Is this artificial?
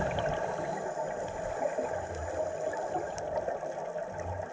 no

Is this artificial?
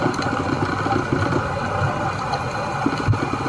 no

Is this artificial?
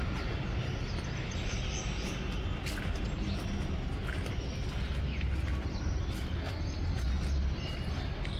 no